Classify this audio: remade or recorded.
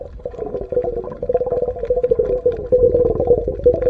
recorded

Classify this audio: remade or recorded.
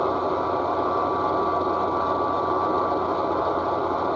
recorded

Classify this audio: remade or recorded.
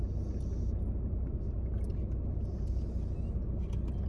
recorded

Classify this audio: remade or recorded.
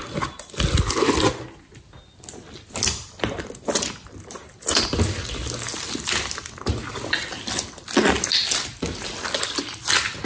recorded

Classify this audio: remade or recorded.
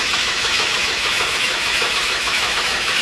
remade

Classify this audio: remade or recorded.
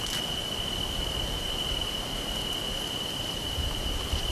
remade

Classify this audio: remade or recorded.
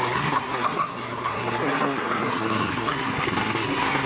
remade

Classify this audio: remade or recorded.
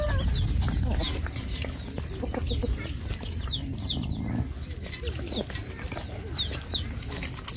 recorded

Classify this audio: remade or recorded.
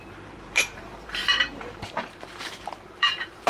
remade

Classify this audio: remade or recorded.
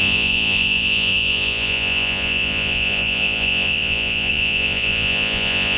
remade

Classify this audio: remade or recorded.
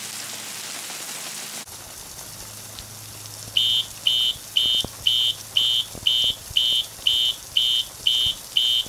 recorded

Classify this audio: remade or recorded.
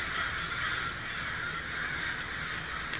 recorded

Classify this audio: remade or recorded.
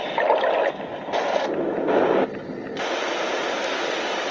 recorded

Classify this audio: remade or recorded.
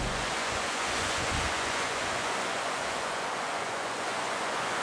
remade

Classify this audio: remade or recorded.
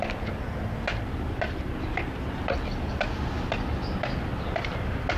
recorded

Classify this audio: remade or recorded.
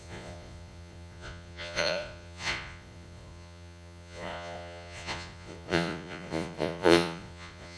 remade